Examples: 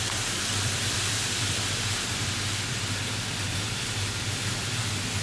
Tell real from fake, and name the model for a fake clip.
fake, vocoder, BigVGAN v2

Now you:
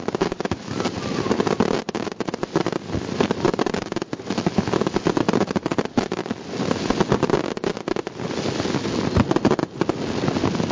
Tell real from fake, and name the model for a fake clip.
real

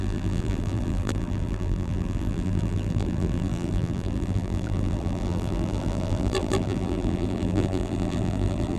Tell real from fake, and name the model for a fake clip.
fake, vocoder, BigVGAN v2